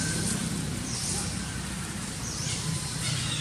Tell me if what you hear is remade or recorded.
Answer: recorded